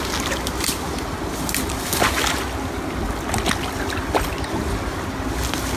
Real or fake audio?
real